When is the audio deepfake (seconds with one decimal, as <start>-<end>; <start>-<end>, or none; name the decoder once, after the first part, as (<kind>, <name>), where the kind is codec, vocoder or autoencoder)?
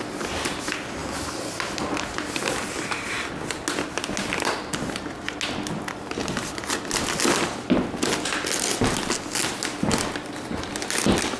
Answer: none